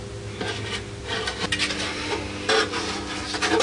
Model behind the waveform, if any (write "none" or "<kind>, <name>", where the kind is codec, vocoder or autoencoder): none